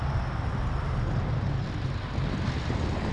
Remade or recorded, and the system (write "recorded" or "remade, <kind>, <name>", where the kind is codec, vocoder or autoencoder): recorded